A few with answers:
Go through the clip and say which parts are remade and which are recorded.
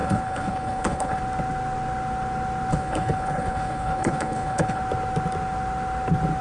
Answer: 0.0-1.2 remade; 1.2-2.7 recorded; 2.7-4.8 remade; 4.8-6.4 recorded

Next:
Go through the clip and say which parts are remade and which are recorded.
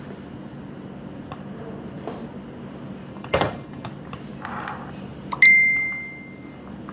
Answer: 0.0-3.1 recorded; 3.1-3.9 remade; 3.9-6.9 recorded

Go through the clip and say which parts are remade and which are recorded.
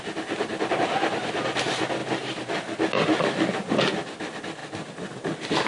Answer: 0.0-5.7 recorded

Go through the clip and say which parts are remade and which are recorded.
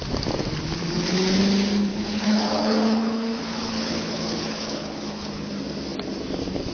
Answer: 0.0-0.8 recorded; 0.8-1.4 remade; 1.4-1.9 recorded; 1.9-5.5 remade; 5.5-6.7 recorded